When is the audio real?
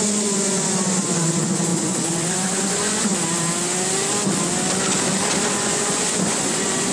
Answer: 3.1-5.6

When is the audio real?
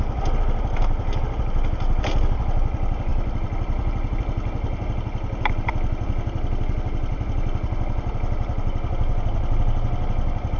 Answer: 0.0-10.6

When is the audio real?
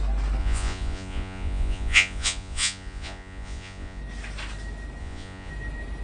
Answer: 0.0-0.4; 4.0-5.0; 5.5-6.0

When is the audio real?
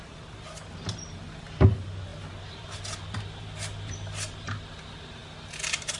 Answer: 0.0-6.0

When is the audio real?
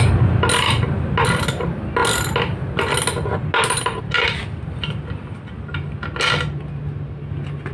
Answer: 0.0-7.7